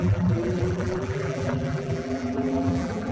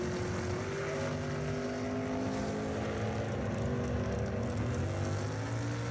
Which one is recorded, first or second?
second